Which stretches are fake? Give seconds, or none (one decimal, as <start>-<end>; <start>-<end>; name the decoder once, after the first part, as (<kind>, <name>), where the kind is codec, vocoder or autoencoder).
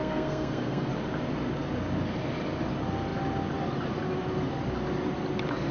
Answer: 0.0-0.9 (codec, SNAC)